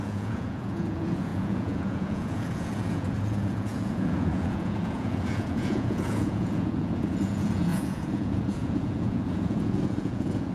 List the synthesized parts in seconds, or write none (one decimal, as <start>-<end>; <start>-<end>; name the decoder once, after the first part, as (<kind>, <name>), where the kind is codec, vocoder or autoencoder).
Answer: 0.0-10.5 (vocoder, Vocos)